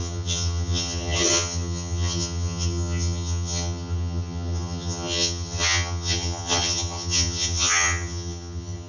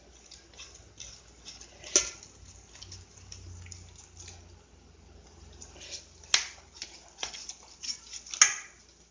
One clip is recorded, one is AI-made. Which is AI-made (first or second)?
first